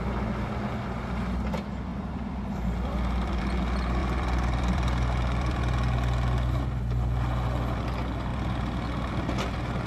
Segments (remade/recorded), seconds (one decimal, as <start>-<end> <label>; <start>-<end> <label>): 0.0-1.9 recorded; 1.9-3.4 remade; 3.4-4.0 recorded; 4.0-5.6 remade; 5.6-9.9 recorded